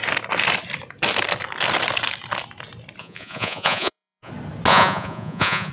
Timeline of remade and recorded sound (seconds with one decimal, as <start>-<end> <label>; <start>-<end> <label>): 0.0-3.0 recorded; 3.0-4.3 remade; 4.3-4.7 recorded; 4.7-5.7 remade